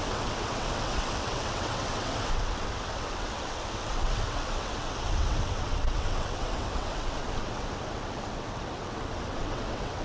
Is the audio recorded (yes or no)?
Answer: no